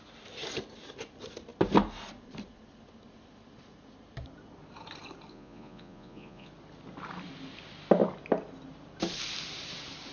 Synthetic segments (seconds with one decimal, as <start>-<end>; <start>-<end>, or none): 5.3-6.5